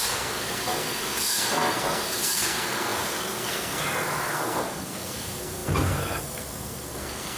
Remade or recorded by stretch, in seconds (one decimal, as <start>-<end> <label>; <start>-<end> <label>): 0.0-7.4 remade